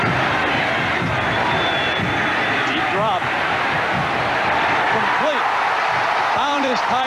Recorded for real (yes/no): no